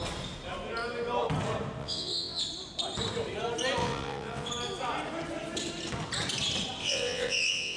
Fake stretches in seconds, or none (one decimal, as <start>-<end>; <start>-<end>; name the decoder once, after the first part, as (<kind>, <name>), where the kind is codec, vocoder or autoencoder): 1.8-2.4 (vocoder, WaveNeXt); 3.8-4.5; 6.8-7.8